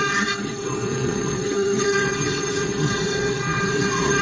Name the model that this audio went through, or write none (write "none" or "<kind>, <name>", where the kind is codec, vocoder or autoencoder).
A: vocoder, WaveNeXt